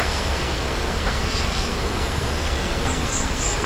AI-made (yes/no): yes